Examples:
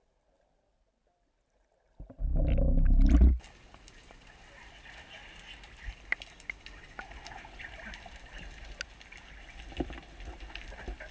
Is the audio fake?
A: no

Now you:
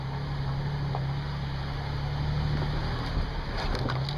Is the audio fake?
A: no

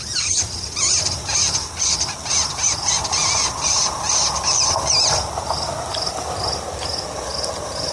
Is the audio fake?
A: no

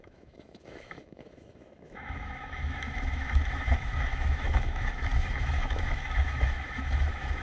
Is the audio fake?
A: yes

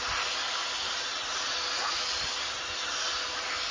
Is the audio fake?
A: no